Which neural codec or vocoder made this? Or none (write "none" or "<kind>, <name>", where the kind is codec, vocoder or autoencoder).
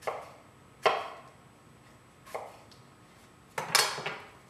none